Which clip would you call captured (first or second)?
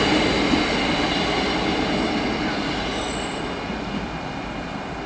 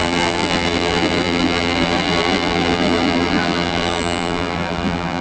first